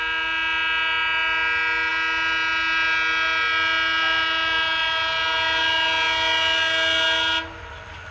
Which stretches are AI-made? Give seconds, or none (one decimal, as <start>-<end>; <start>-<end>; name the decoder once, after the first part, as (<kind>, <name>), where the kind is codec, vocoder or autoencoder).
none